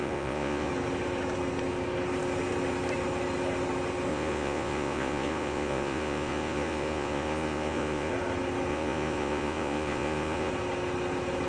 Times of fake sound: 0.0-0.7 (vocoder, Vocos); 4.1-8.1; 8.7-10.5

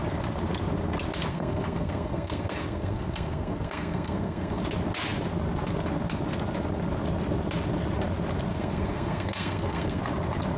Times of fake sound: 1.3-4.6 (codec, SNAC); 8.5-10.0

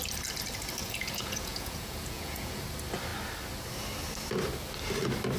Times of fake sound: 0.8-2.6 (vocoder, Vocos)

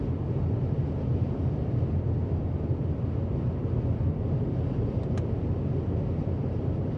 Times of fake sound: none